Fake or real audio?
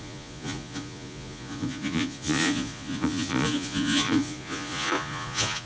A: fake